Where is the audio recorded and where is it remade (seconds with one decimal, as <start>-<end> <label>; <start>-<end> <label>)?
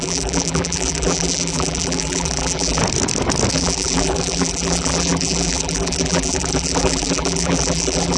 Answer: 0.0-2.8 remade; 2.8-3.5 recorded; 3.5-8.2 remade